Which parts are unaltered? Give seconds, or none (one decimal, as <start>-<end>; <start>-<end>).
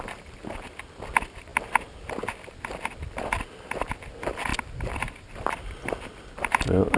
0.0-7.0